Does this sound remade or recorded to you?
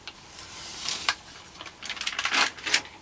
remade